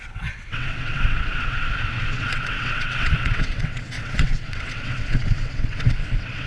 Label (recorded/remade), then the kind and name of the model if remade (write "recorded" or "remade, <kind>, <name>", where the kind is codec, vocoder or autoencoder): remade, vocoder, WaveNeXt